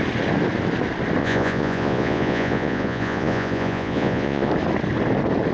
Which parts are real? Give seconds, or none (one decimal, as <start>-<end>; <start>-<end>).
0.0-1.2; 4.5-5.5